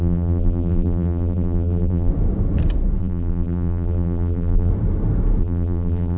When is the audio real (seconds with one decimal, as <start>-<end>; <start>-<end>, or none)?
2.1-3.0; 4.7-5.4